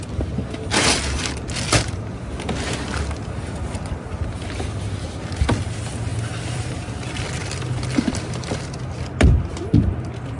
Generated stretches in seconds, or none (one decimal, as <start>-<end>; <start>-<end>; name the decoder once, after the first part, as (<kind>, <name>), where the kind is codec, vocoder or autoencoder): 6.1-6.7 (vocoder, BigVGAN v2); 7.4-8.8